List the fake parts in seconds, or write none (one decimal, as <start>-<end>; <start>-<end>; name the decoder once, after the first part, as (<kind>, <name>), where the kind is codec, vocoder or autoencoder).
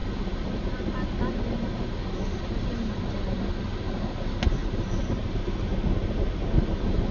4.6-5.5 (vocoder, BigVGAN v2)